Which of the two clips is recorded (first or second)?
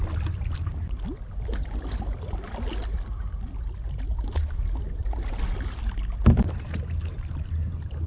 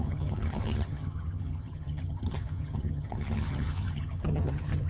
first